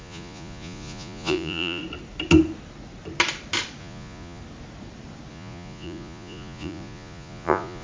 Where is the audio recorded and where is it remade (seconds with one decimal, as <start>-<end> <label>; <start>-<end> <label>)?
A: 0.0-1.8 remade; 1.8-3.8 recorded; 3.8-4.4 remade; 4.4-5.3 recorded; 5.3-7.8 remade